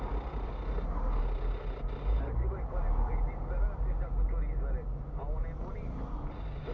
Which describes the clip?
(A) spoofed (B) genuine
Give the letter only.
B